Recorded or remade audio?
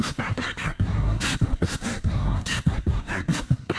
remade